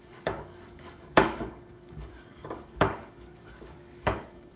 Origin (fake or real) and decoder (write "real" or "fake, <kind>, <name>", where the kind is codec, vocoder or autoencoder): fake, codec, DAC